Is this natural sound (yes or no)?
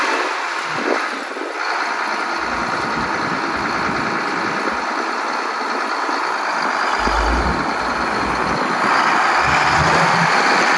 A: yes